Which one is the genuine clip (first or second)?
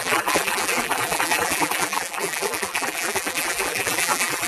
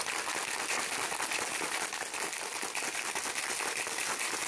second